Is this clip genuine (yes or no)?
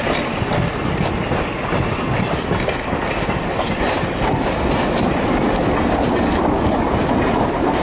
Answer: yes